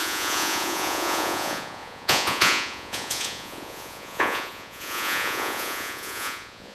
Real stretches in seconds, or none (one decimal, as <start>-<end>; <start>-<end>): none